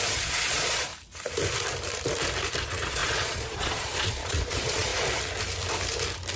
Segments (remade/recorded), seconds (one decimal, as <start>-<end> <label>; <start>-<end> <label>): 0.0-0.9 remade; 0.9-2.6 recorded; 2.6-4.9 remade; 4.9-6.4 recorded